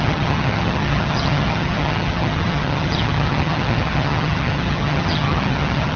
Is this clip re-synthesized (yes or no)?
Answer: yes